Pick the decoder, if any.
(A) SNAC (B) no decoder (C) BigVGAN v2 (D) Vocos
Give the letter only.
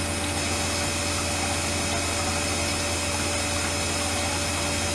B